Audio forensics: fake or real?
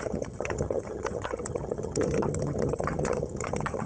fake